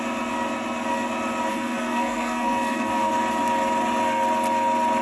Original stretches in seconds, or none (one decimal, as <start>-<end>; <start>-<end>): 0.0-1.5; 3.1-5.0